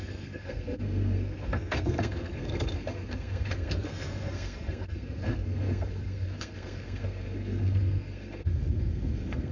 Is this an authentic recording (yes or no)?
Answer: no